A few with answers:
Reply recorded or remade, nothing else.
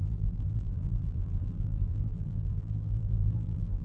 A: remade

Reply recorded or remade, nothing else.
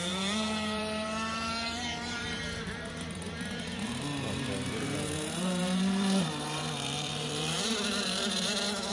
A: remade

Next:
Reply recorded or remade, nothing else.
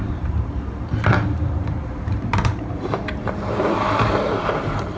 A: remade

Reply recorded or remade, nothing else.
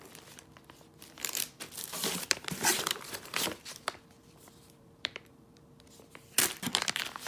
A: remade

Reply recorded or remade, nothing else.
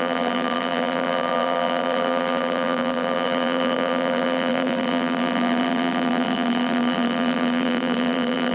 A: remade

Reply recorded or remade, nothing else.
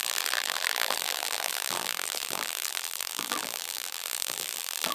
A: remade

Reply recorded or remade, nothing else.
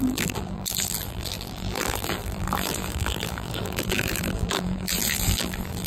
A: remade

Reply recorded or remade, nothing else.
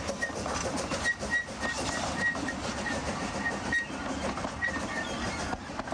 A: recorded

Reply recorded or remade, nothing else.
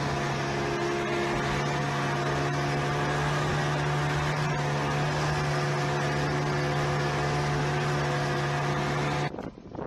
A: recorded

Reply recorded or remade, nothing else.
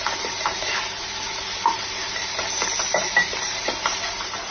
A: remade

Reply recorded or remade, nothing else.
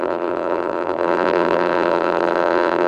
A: remade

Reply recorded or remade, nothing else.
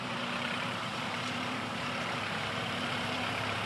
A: remade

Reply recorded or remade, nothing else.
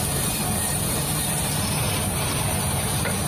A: remade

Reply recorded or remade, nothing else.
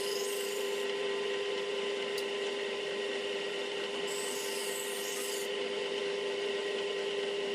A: recorded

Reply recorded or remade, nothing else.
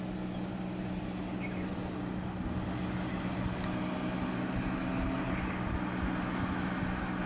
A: recorded